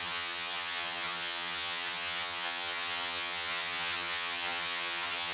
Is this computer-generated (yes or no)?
yes